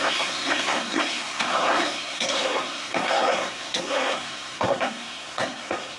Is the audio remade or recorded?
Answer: remade